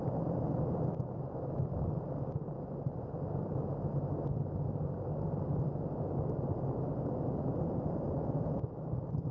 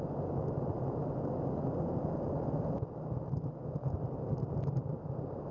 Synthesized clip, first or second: first